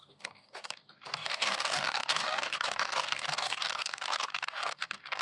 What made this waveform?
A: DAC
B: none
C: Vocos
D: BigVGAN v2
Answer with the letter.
A